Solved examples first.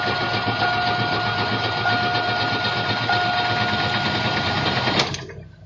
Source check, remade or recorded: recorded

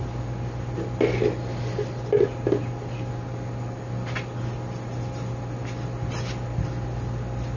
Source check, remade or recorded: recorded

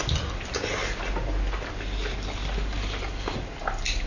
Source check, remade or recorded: recorded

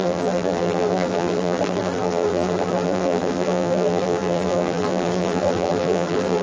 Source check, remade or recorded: remade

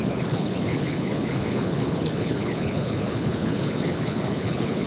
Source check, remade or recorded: remade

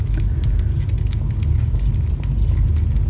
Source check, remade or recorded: recorded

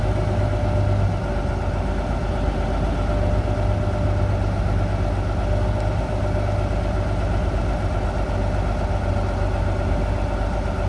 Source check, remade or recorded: recorded